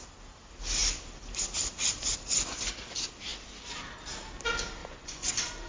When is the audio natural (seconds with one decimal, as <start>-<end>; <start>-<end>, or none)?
0.0-4.8; 5.3-5.7